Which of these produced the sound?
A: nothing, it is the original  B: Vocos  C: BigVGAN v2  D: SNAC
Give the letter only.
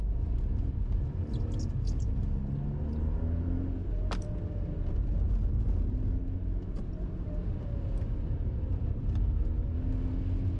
A